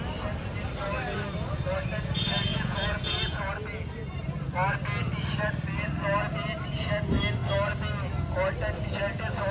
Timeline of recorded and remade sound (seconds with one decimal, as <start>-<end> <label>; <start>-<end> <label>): 0.0-2.5 recorded; 2.5-3.5 remade; 3.5-9.5 recorded